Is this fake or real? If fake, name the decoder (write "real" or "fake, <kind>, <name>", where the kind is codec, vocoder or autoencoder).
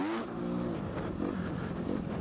real